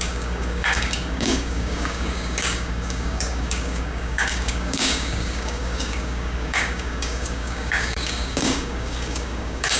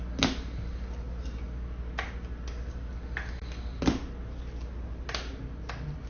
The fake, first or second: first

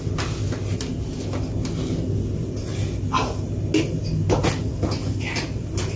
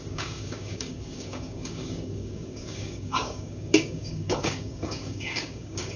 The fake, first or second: second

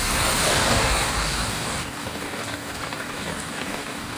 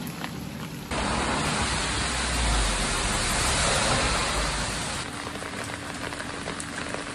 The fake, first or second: first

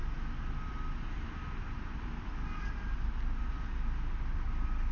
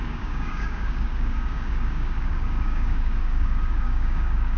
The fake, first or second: second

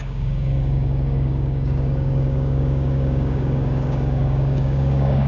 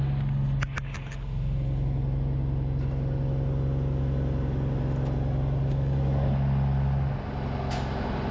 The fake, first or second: first